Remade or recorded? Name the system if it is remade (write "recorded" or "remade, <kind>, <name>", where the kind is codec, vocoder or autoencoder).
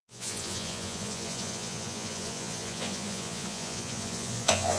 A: remade, vocoder, Vocos